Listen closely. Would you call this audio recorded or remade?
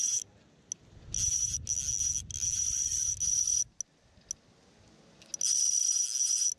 recorded